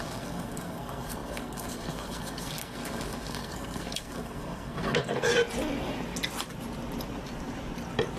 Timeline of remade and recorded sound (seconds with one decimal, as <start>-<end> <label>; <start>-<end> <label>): 0.0-5.3 remade; 5.3-8.2 recorded